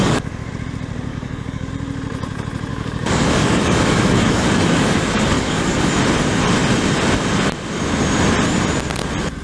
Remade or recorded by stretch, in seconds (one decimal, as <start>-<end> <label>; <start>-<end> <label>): 0.0-0.5 remade; 0.5-1.1 recorded; 1.1-1.7 remade; 1.7-2.7 recorded; 2.7-5.9 remade; 5.9-9.4 recorded